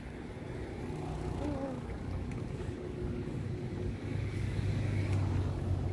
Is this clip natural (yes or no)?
no